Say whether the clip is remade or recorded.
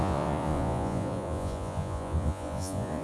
remade